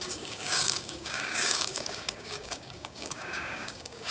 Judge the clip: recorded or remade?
remade